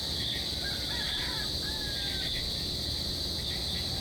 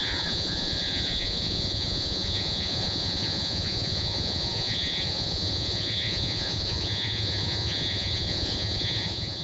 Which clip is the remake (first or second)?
second